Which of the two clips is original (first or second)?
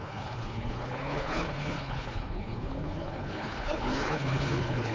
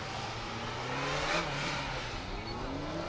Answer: second